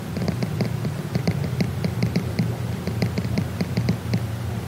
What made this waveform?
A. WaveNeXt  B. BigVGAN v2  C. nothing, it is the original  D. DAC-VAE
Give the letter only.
B